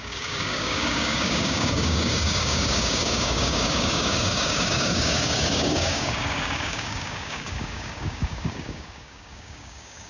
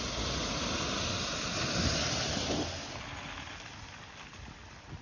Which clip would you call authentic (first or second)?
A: second